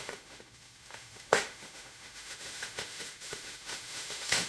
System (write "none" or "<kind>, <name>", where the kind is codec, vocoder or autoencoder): autoencoder, DAC-VAE